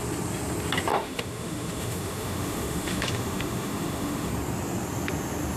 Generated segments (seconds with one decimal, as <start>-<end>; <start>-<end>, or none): 0.9-4.3